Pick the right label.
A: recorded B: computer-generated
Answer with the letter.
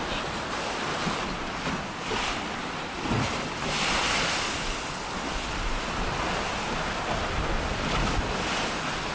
A